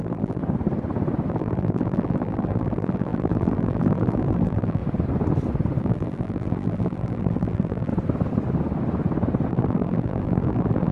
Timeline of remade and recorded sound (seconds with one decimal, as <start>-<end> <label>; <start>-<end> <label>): 0.0-0.4 remade; 0.4-1.3 recorded; 1.3-4.8 remade; 4.8-5.8 recorded; 5.8-7.9 remade; 7.9-9.5 recorded; 9.5-10.9 remade